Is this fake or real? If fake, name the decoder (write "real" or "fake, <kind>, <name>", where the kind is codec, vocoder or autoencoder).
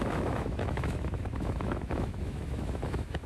fake, autoencoder, DAC-VAE